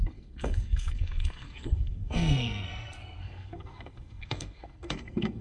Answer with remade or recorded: remade